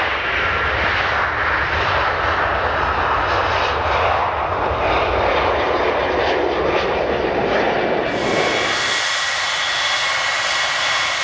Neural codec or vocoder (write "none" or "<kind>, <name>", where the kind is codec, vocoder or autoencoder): none